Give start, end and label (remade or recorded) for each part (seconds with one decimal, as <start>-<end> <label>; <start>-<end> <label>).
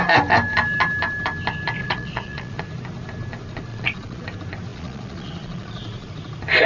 0.0-1.8 recorded; 1.8-2.6 remade; 2.6-3.7 recorded; 3.7-4.2 remade; 4.2-4.7 recorded; 4.7-6.1 remade; 6.1-6.7 recorded